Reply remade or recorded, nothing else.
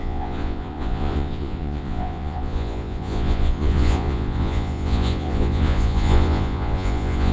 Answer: remade